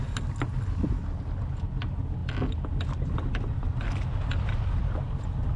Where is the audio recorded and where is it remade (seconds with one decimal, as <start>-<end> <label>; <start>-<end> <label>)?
0.0-5.6 recorded